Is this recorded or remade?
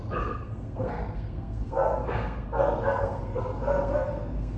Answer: remade